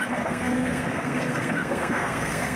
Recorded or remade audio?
remade